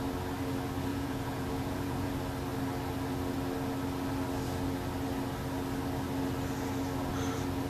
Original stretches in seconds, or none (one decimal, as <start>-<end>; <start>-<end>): 0.0-0.9; 2.1-7.7